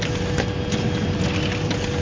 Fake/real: real